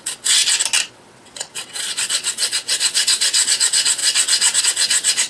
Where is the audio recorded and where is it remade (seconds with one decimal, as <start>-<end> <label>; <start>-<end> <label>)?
0.0-0.4 remade; 0.4-0.9 recorded; 0.9-5.3 remade

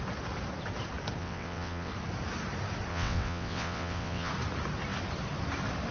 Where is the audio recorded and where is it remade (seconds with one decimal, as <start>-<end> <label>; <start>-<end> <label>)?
0.0-1.2 recorded; 1.2-1.9 remade; 1.9-2.9 recorded; 2.9-4.3 remade; 4.3-5.9 recorded

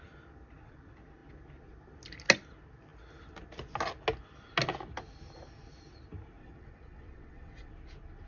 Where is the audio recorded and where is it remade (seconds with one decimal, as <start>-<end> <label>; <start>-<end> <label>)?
0.0-6.4 recorded; 6.4-7.7 remade; 7.7-8.3 recorded

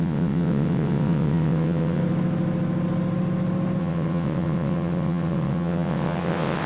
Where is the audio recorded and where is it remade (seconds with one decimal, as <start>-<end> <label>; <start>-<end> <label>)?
0.0-2.0 remade; 2.0-3.8 recorded; 3.8-6.7 remade

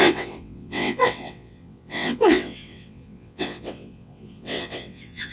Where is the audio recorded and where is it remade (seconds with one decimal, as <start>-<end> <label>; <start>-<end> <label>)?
0.0-5.3 remade

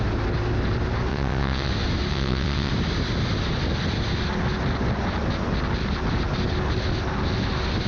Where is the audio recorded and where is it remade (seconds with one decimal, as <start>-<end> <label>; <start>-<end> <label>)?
0.0-1.1 recorded; 1.1-1.7 remade; 1.7-2.1 recorded; 2.1-2.7 remade; 2.7-7.9 recorded

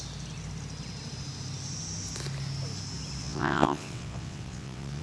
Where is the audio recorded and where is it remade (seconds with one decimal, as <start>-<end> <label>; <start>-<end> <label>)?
0.0-3.2 recorded; 3.2-5.0 remade

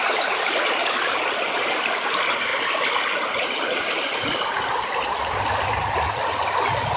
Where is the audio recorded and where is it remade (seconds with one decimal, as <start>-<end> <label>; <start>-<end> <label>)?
0.0-7.0 recorded